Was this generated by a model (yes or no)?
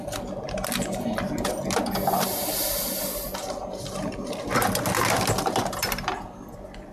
no